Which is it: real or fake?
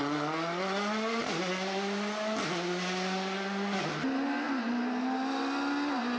real